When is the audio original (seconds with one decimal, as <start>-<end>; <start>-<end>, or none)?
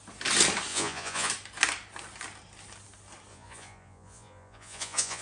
0.0-0.7; 1.3-3.3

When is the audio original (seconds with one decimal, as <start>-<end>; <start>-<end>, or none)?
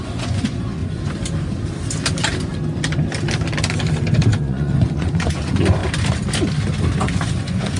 0.8-4.4; 5.8-7.0